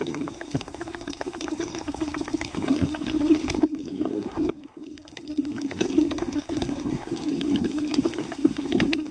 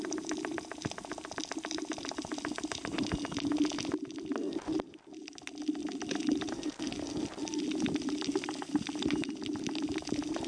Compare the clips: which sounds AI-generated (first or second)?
first